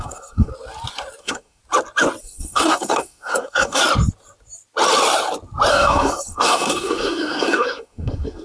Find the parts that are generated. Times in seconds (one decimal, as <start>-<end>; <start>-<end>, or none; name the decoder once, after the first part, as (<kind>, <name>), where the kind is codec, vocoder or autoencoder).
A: 0.0-0.5 (codec, SNAC); 1.2-1.6; 2.2-3.8; 5.7-8.4